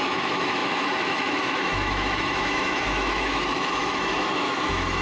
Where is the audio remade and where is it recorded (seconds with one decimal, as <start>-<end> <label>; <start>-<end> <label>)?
0.0-5.0 remade